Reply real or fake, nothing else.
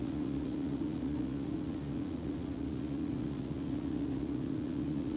fake